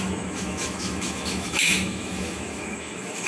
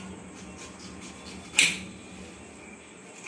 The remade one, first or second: first